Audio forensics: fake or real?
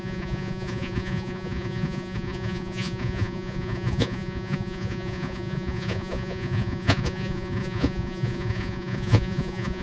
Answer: fake